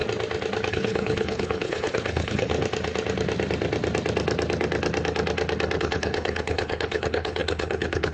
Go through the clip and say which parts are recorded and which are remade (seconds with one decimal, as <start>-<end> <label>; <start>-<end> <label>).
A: 0.0-0.7 recorded; 0.7-2.5 remade; 2.5-5.8 recorded; 5.8-8.1 remade